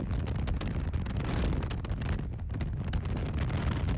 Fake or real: real